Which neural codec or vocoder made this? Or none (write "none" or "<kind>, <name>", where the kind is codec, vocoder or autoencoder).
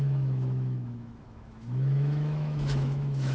autoencoder, DAC-VAE